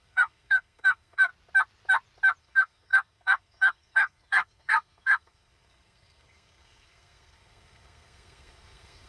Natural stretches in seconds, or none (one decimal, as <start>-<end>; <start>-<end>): 1.3-2.4